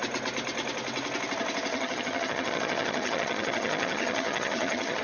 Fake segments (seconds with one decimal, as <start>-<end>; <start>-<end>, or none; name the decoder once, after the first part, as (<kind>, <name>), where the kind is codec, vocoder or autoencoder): 1.7-5.0 (vocoder, HiFi-GAN)